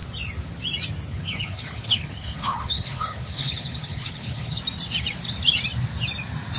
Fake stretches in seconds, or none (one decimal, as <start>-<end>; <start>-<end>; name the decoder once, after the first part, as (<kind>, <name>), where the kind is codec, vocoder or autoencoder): 1.1-4.6 (codec, HILCodec)